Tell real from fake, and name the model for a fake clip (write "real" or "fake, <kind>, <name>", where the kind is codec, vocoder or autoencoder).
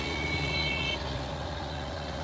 fake, vocoder, Vocos